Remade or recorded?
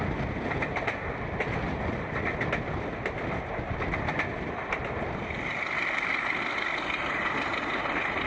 recorded